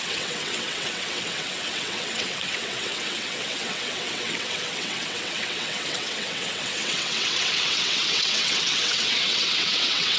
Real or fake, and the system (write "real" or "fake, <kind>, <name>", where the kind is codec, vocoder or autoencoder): fake, vocoder, WaveNeXt